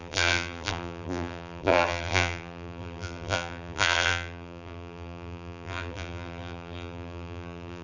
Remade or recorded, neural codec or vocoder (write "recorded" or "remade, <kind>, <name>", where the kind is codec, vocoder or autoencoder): remade, vocoder, BigVGAN v2